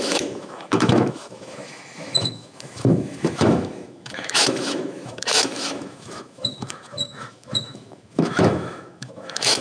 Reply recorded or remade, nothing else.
remade